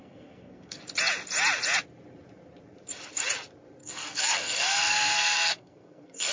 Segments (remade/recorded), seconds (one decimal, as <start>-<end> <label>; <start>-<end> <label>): 0.0-0.8 remade; 0.8-3.8 recorded; 3.8-6.3 remade